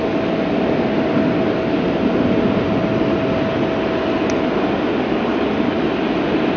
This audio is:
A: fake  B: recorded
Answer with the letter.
B